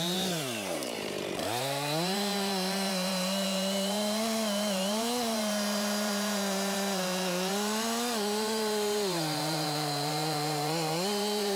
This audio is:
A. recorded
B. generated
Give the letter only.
B